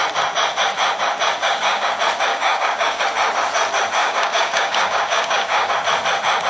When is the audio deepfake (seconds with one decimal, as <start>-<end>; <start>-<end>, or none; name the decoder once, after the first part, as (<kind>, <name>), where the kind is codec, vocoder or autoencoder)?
1.4-1.9 (codec, DAC); 2.3-3.0; 4.0-5.7